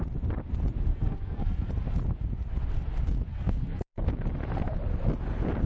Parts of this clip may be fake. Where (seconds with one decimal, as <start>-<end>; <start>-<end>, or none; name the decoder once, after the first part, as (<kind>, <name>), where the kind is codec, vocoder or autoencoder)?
0.9-1.7 (codec, SNAC); 3.3-4.1